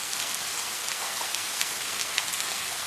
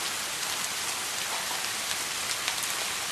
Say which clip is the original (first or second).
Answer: second